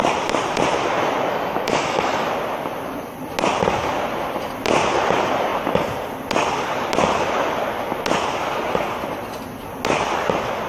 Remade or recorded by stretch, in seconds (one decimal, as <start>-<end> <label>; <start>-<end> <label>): 0.0-1.3 recorded; 1.3-2.3 remade; 2.3-10.7 recorded